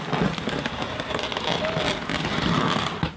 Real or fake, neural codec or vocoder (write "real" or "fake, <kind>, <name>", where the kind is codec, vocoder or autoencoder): real